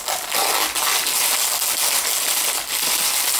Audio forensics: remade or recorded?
recorded